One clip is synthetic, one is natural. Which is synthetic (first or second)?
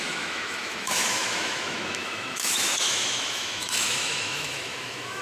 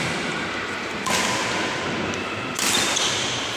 first